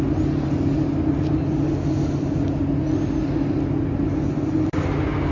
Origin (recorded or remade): recorded